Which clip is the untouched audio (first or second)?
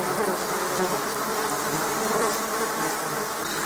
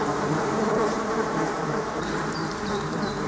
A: first